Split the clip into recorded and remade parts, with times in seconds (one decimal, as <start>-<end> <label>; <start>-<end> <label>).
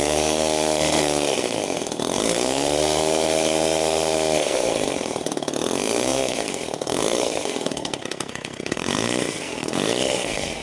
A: 0.0-10.6 remade